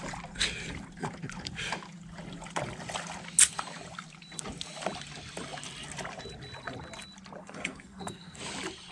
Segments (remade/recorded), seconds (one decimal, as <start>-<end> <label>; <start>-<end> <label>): 0.0-7.4 recorded; 7.4-8.4 remade; 8.4-8.9 recorded